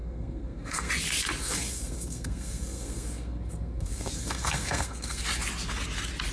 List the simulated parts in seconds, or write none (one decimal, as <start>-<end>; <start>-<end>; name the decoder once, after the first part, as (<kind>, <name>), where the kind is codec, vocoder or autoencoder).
0.0-0.9 (codec, SNAC); 1.4-5.2

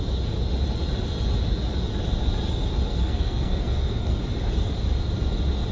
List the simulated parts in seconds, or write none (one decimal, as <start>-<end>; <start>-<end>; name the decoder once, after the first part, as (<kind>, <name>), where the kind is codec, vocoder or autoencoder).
2.9-4.2 (codec, SNAC)

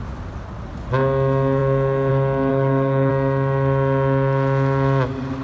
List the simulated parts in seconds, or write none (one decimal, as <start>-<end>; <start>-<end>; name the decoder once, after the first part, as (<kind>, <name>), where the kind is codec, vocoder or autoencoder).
2.5-3.1 (codec, SNAC)

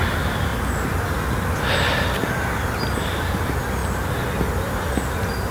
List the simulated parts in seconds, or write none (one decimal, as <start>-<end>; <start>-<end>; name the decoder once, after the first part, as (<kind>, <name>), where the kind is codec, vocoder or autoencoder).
none

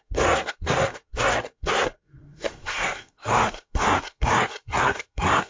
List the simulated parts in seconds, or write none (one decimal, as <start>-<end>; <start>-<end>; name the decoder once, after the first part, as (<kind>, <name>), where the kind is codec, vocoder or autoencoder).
0.0-5.5 (codec, SNAC)